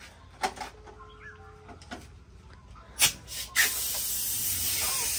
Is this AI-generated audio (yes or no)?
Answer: no